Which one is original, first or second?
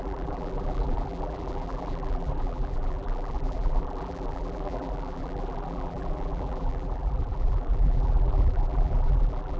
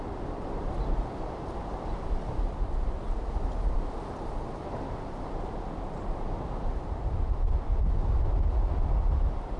second